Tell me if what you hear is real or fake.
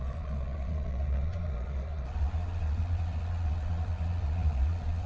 fake